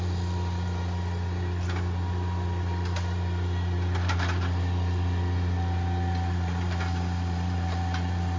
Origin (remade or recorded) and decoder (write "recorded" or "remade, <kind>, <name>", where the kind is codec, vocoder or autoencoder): recorded